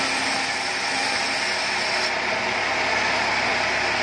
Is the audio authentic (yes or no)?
yes